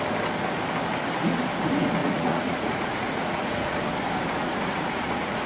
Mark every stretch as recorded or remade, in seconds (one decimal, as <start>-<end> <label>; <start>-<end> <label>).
0.0-2.0 recorded; 2.0-3.8 remade; 3.8-4.4 recorded; 4.4-5.5 remade